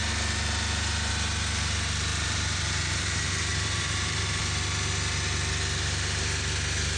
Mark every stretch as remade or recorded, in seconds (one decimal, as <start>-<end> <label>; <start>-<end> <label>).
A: 0.0-2.1 recorded; 2.1-4.4 remade; 4.4-7.0 recorded